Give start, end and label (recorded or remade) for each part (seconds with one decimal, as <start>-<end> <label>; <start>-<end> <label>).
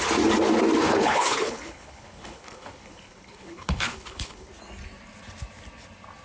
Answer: 0.0-0.8 recorded; 0.8-4.5 remade; 4.5-6.2 recorded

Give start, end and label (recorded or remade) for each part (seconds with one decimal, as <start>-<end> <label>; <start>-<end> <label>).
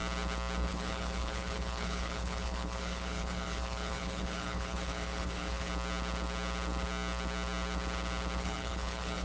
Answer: 0.0-0.7 recorded; 0.7-5.7 remade; 5.7-8.4 recorded; 8.4-9.2 remade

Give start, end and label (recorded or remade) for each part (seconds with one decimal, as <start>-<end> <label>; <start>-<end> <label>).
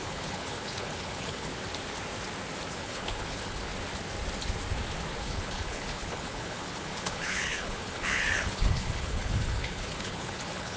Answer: 0.0-1.5 remade; 1.5-2.7 recorded; 2.7-3.7 remade; 3.7-5.2 recorded; 5.2-10.8 remade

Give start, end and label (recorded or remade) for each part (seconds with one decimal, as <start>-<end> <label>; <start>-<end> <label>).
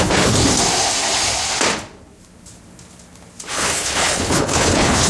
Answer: 0.0-0.4 remade; 0.4-3.5 recorded; 3.5-5.1 remade